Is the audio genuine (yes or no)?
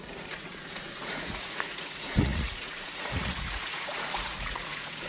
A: no